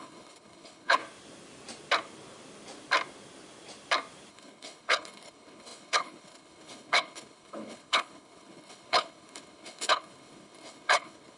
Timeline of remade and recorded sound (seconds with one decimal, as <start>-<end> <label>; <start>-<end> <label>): 0.0-1.0 remade; 1.0-4.3 recorded; 4.3-11.4 remade